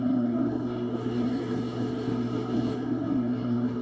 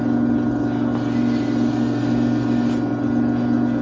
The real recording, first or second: second